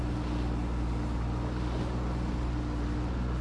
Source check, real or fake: real